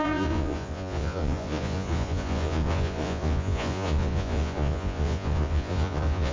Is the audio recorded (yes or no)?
no